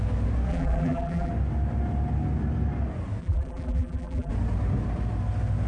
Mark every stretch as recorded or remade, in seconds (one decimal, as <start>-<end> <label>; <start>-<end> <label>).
0.0-0.5 recorded; 0.5-1.3 remade; 1.3-3.2 recorded; 3.2-4.3 remade; 4.3-5.7 recorded